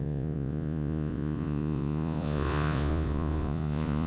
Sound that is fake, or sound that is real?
fake